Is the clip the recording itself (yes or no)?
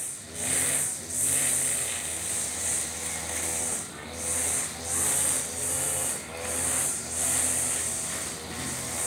yes